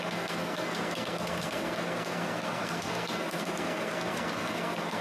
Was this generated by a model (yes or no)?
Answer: yes